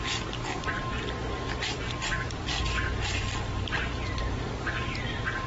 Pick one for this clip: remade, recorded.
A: recorded